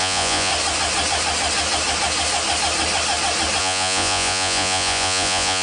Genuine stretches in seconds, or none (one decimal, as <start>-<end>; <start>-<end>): 0.5-3.6